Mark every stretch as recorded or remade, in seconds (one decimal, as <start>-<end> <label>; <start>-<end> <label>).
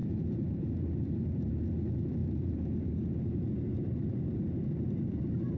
0.0-1.7 remade; 1.7-2.2 recorded; 2.2-5.6 remade